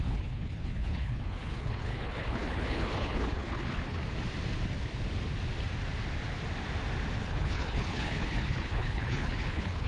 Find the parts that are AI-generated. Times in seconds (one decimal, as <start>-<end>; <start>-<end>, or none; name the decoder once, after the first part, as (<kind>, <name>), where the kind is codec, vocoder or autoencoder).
0.0-4.0 (codec, HILCodec); 7.2-9.9